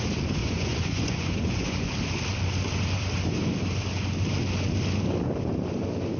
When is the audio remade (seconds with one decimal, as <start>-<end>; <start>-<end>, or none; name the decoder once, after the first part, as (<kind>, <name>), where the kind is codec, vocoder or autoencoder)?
0.4-1.9 (vocoder, Vocos)